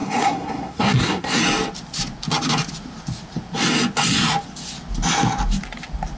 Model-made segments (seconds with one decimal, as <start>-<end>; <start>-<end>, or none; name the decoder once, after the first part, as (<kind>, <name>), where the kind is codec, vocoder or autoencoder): 0.0-1.4 (codec, SNAC)